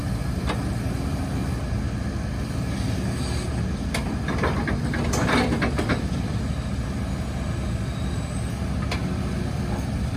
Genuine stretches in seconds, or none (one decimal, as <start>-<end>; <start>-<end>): 0.0-10.2